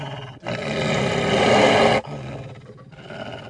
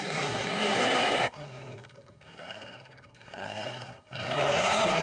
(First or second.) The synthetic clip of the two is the second